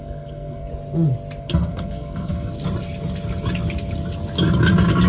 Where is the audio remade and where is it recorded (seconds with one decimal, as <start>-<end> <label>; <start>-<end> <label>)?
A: 0.0-0.7 remade; 0.7-1.4 recorded; 1.4-2.5 remade; 2.5-5.1 recorded